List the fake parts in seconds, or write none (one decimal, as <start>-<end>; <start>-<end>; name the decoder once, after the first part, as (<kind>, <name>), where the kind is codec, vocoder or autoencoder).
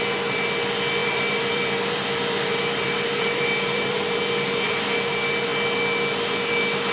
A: 1.0-5.1 (vocoder, BigVGAN v2)